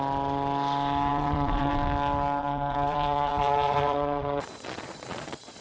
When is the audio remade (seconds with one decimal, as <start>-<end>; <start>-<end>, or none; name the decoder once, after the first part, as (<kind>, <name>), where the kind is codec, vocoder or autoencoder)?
1.1-1.7 (vocoder, Vocos); 2.4-5.6